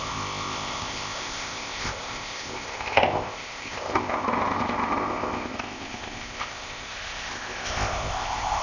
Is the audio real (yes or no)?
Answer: no